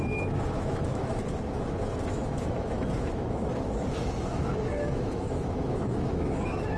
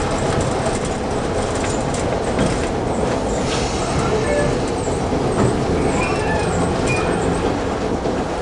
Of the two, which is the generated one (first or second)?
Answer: first